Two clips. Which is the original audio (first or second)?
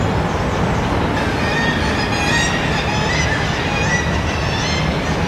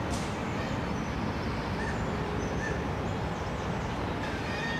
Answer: first